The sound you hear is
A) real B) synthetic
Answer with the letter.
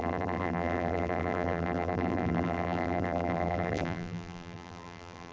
B